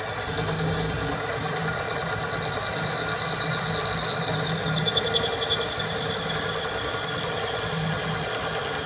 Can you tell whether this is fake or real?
real